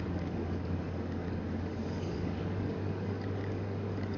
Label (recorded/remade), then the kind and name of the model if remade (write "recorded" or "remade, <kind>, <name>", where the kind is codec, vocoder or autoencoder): remade, codec, DAC